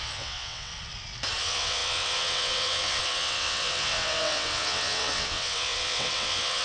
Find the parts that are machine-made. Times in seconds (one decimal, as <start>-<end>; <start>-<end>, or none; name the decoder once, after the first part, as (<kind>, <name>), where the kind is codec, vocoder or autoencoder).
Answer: 0.0-0.7 (vocoder, WaveNeXt); 1.4-6.6